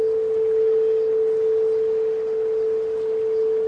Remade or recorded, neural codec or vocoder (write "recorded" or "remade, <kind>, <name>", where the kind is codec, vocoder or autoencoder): recorded